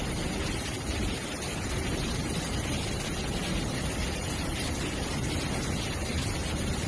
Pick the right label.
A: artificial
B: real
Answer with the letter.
B